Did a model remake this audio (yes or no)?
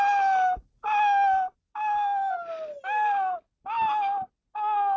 no